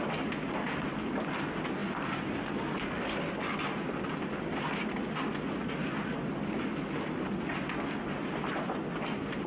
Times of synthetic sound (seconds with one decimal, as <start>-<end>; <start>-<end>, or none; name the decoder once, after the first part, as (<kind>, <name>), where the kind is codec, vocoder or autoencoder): none